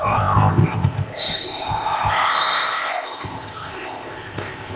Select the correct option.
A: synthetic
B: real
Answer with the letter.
A